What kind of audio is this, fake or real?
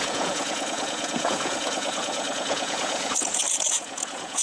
fake